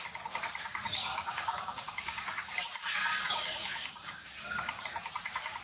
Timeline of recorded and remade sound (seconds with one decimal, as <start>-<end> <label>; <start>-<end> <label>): 0.0-1.1 recorded; 1.1-2.6 remade; 2.6-3.1 recorded; 3.1-4.8 remade; 4.8-5.6 recorded